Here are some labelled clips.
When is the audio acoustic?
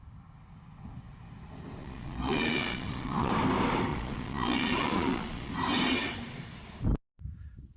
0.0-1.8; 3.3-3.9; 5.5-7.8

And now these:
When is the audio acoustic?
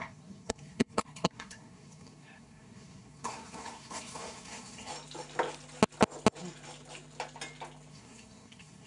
4.9-7.9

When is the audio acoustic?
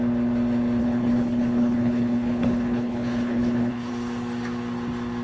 0.0-0.8; 3.9-5.2